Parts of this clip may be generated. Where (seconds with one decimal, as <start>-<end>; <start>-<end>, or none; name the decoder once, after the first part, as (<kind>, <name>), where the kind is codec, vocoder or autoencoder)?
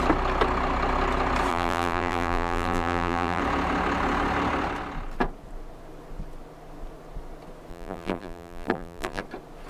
1.5-3.4 (vocoder, BigVGAN v2); 7.7-9.2